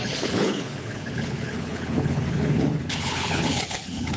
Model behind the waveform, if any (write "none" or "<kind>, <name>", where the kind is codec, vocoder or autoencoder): codec, HILCodec